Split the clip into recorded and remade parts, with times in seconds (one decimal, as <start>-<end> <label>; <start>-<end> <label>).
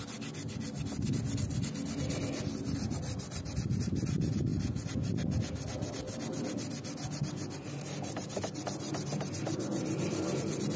0.0-10.8 recorded